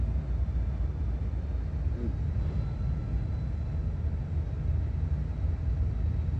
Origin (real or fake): real